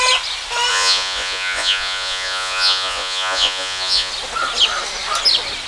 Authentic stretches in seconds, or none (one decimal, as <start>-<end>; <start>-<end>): 0.0-0.7; 4.1-5.7